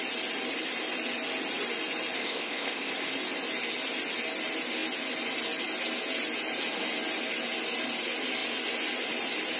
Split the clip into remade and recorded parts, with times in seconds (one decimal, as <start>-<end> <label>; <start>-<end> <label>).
0.0-2.2 recorded; 2.2-2.9 remade; 2.9-9.6 recorded